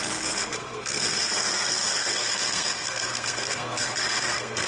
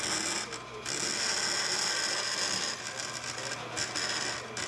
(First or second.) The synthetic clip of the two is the first